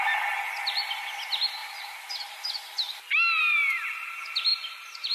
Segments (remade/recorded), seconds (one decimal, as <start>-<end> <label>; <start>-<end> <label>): 0.0-1.6 recorded; 1.6-4.1 remade; 4.1-4.5 recorded; 4.5-5.1 remade